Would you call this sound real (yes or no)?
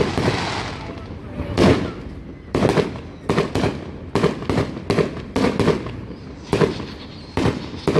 yes